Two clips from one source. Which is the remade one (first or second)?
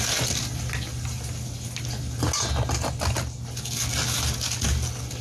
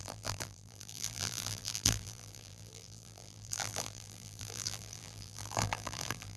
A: second